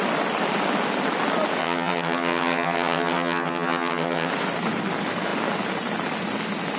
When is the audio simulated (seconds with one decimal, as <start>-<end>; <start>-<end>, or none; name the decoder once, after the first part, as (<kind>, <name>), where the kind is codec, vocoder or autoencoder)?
1.6-4.3 (vocoder, HiFi-GAN)